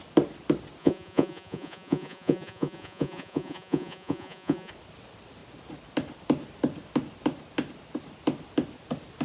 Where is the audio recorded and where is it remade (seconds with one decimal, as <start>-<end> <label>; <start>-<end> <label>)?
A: 0.0-0.8 recorded; 0.8-4.7 remade; 4.7-9.2 recorded